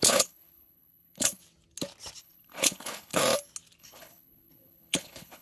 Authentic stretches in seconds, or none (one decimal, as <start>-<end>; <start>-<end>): 1.4-2.2; 3.2-3.8